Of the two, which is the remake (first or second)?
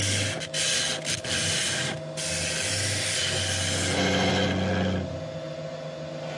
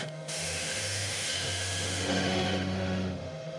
second